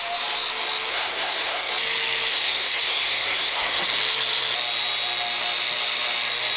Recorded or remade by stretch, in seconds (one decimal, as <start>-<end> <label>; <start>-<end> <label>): 0.0-0.9 recorded; 0.9-1.7 remade; 1.7-2.3 recorded; 2.3-3.8 remade; 3.8-6.6 recorded